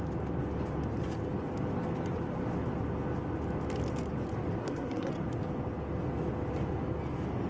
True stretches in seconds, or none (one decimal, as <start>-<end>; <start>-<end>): 0.0-4.6; 5.1-7.5